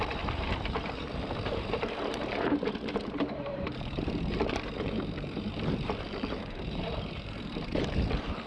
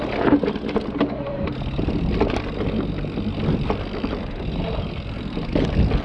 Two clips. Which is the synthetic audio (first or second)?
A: first